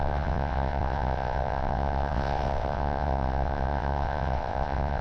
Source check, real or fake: fake